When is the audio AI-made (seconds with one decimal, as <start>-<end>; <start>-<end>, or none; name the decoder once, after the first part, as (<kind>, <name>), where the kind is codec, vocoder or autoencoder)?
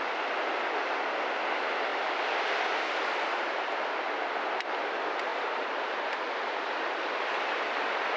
5.3-6.1 (vocoder, BigVGAN v2)